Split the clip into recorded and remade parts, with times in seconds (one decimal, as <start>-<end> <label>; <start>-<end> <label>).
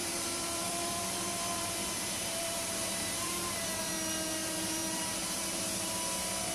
0.0-3.9 remade; 3.9-4.4 recorded; 4.4-5.9 remade; 5.9-6.5 recorded